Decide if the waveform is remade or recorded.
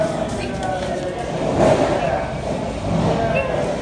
recorded